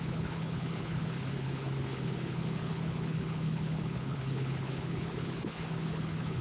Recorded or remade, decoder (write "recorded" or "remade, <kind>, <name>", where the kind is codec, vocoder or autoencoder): remade, codec, HILCodec